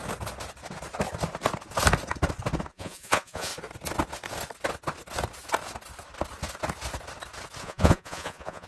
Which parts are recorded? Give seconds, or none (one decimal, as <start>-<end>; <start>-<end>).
0.0-2.7; 3.5-7.6